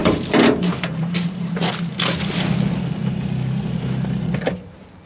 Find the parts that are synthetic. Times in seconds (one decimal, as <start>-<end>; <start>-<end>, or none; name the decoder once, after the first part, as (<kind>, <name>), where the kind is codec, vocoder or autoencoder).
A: 0.0-1.5 (vocoder, BigVGAN v2)

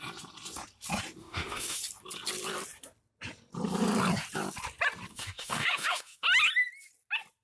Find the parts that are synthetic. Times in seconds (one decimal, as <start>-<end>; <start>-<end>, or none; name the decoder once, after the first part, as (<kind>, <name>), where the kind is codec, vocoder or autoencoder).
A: 1.2-1.8 (autoencoder, DAC-VAE); 5.1-6.2

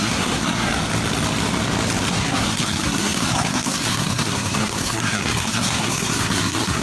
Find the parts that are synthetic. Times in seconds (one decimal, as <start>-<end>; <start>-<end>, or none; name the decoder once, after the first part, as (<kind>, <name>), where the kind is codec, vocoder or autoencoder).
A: 0.0-0.7 (codec, SNAC); 2.1-6.8

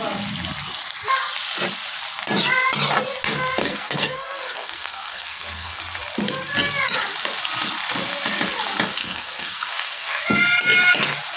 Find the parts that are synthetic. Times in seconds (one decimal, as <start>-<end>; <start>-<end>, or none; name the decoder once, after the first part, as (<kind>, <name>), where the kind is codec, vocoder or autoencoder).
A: 3.6-5.8 (codec, SNAC); 9.0-10.2

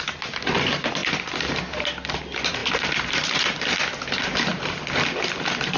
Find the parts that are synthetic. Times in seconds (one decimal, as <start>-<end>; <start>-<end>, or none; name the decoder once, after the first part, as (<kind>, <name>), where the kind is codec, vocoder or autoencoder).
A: 1.0-1.6 (vocoder, BigVGAN v2); 2.6-4.1; 4.5-5.8